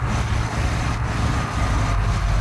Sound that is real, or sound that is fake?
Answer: real